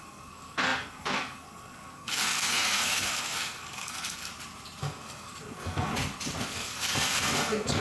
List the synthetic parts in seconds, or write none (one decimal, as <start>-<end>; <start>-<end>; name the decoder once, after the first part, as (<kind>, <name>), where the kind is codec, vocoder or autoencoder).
0.0-4.3 (codec, SNAC); 4.8-5.9; 6.4-7.8